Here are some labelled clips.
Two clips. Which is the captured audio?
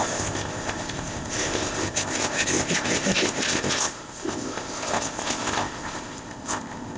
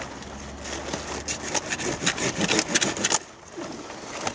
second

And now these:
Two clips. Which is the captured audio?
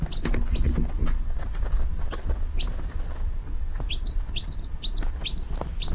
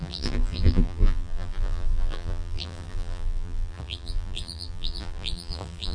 first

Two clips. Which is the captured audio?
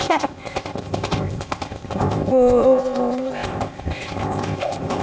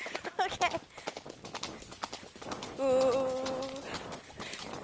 second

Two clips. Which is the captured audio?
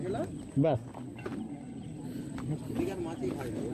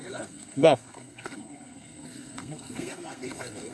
first